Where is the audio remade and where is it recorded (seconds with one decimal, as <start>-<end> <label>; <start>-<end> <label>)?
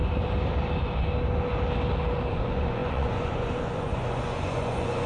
0.0-2.3 recorded; 2.3-5.1 remade